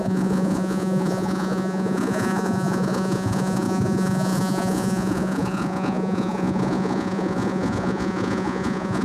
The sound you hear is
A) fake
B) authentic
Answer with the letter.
A